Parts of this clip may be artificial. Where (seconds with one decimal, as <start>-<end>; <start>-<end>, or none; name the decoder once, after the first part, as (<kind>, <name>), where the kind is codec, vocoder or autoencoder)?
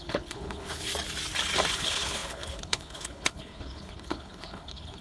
0.0-0.9 (codec, HILCodec); 1.7-5.0